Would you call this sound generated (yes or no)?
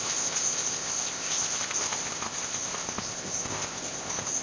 yes